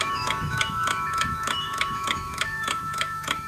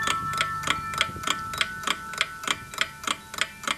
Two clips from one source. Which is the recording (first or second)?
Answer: second